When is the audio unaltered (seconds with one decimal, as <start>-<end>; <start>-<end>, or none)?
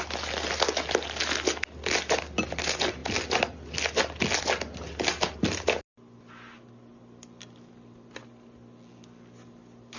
0.0-10.0